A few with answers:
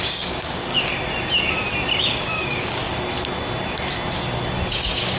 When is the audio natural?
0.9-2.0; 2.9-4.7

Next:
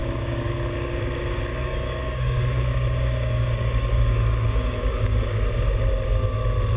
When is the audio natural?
0.5-1.5; 5.6-6.8

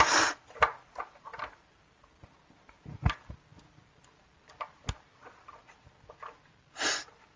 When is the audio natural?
0.0-7.4

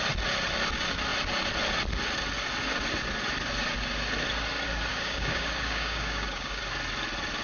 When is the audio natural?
0.0-4.9; 6.6-7.4